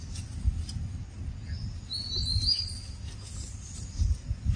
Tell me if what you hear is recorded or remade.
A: recorded